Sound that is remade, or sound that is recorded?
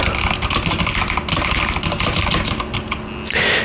recorded